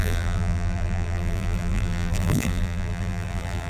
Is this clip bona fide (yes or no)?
no